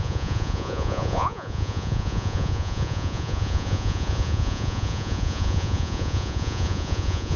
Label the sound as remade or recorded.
remade